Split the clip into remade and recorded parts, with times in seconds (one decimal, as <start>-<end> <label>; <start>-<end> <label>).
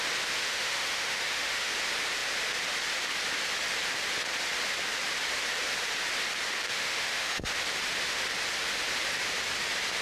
0.0-0.4 recorded; 0.4-1.7 remade; 1.7-6.7 recorded; 6.7-7.5 remade; 7.5-10.0 recorded